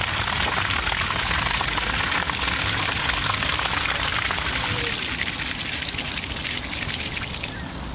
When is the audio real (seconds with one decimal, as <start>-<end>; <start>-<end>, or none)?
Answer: 0.0-7.9